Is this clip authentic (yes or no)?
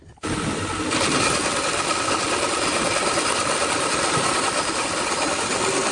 yes